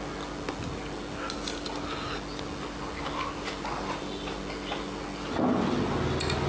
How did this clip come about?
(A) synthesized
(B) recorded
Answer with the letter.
B